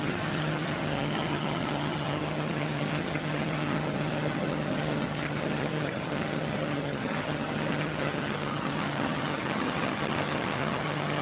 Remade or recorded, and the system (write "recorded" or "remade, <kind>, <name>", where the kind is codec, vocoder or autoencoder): remade, vocoder, HiFi-GAN